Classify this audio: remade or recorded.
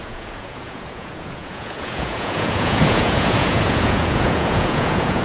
remade